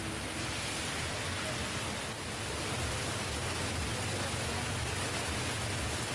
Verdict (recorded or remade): recorded